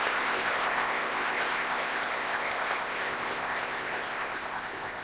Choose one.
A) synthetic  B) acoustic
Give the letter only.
A